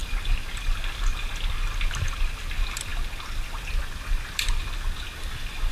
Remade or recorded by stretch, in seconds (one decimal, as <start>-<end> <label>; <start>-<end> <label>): 0.0-5.7 recorded

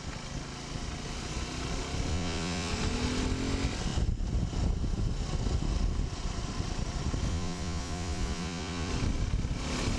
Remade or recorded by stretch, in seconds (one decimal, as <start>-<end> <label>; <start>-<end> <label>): 0.0-2.1 recorded; 2.1-2.7 remade; 2.7-7.3 recorded; 7.3-8.9 remade; 8.9-10.0 recorded

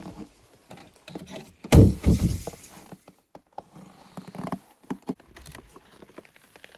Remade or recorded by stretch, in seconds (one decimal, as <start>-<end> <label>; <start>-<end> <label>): 0.0-0.8 recorded; 0.8-2.9 remade; 2.9-6.8 recorded

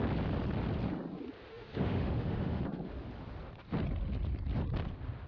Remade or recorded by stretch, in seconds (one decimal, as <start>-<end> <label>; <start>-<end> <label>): 0.0-1.5 recorded; 1.5-2.6 remade; 2.6-5.3 recorded

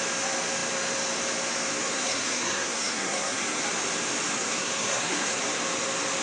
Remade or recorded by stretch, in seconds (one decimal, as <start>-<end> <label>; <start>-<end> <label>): 0.0-1.8 recorded; 1.8-3.6 remade; 3.6-4.3 recorded; 4.3-5.4 remade; 5.4-6.2 recorded